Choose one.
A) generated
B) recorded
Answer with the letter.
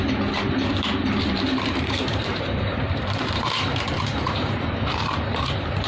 A